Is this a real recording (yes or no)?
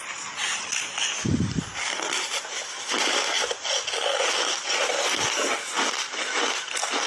yes